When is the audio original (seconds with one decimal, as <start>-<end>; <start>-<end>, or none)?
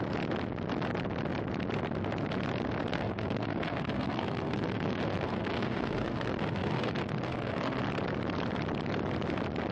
0.0-2.9; 7.8-9.7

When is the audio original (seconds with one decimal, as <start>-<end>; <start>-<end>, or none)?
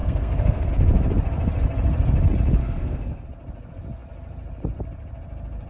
0.7-2.6; 3.2-5.7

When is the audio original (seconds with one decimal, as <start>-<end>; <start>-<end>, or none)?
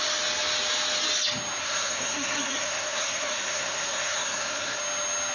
0.0-1.6; 4.8-5.3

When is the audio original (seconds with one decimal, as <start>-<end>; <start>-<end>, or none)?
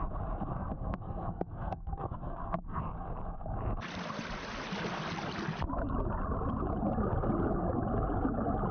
0.0-0.5; 2.8-8.7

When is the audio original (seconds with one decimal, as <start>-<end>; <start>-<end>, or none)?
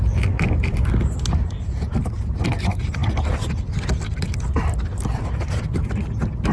0.0-6.5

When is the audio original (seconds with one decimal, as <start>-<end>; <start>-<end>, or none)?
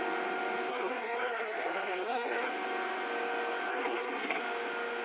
0.0-0.7; 2.5-3.7; 4.4-5.0